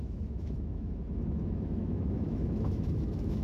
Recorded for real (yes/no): no